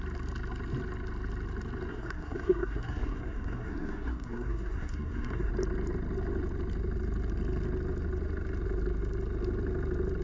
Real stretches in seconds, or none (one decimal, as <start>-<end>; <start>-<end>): 0.0-1.9; 5.5-10.2